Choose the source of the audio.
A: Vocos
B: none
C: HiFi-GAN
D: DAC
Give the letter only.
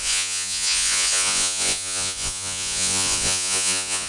A